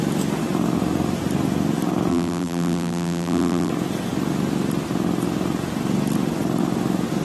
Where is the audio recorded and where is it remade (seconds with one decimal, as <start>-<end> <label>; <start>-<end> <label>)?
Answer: 0.0-2.1 recorded; 2.1-3.7 remade; 3.7-7.2 recorded